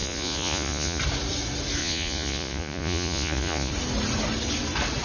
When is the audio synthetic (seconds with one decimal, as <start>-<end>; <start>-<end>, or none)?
0.0-1.0; 1.8-3.7